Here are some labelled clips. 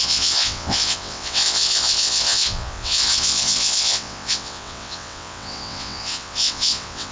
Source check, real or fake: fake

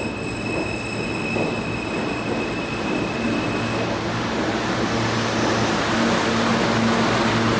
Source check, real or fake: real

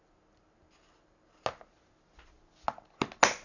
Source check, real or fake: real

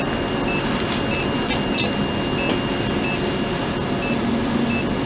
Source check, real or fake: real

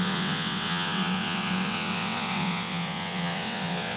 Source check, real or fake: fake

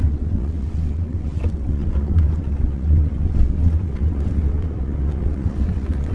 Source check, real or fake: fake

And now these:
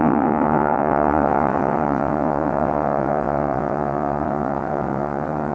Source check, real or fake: fake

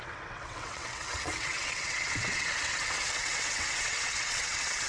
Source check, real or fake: fake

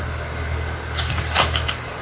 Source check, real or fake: real